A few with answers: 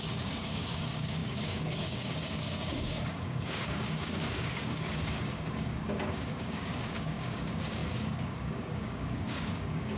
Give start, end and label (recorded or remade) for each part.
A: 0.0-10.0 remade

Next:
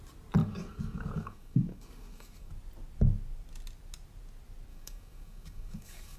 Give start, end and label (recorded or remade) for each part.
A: 0.0-0.4 recorded; 0.4-2.5 remade; 2.5-4.7 recorded; 4.7-6.2 remade

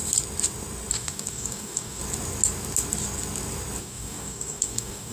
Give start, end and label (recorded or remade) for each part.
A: 0.0-0.9 recorded; 0.9-2.0 remade; 2.0-3.8 recorded; 3.8-5.1 remade

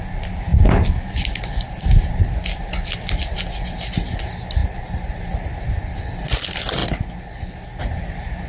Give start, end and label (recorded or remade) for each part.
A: 0.0-8.5 recorded

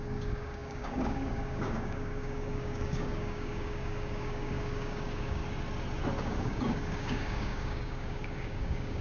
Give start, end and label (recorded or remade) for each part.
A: 0.0-5.4 remade; 5.4-6.2 recorded; 6.2-9.0 remade